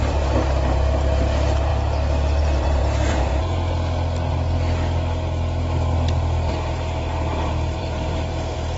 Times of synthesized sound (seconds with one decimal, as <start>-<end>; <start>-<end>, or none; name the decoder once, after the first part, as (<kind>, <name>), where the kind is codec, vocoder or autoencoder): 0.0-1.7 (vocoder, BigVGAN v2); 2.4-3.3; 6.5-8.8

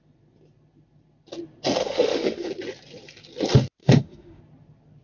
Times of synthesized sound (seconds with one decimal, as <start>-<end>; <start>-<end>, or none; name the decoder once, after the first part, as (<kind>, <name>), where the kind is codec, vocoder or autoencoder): 1.8-2.5 (autoencoder, DAC-VAE); 3.8-4.4

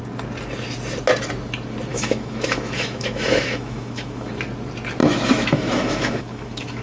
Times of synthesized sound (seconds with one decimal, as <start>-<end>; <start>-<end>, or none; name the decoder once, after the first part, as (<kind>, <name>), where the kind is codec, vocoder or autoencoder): 1.9-4.3 (autoencoder, DAC-VAE); 5.0-6.8

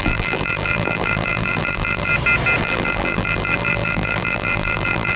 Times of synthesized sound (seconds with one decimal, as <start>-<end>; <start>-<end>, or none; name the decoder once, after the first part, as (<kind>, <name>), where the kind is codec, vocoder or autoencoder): 0.0-2.1 (vocoder, BigVGAN v2); 2.6-5.2

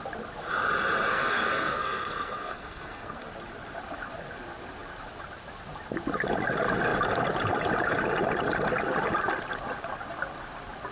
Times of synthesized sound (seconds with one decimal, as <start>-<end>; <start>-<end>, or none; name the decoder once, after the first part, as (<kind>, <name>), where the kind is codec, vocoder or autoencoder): 1.1-3.2 (codec, SNAC)

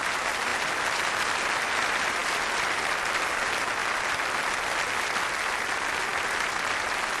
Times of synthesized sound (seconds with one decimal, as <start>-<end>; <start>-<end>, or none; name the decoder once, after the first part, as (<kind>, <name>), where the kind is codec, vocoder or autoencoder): none

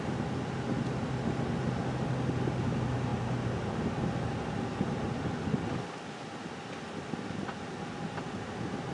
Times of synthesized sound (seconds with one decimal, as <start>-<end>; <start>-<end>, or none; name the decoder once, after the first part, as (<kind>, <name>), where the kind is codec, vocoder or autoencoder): none